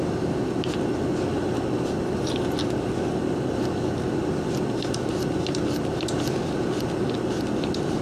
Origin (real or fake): real